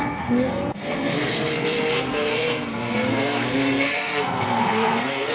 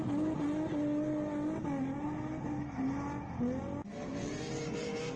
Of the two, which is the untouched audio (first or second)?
second